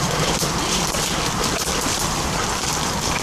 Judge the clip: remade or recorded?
remade